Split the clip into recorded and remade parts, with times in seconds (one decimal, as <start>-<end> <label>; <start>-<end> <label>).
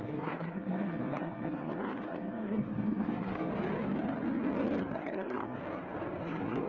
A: 0.0-3.5 remade; 3.5-4.8 recorded; 4.8-5.6 remade; 5.6-6.2 recorded; 6.2-6.7 remade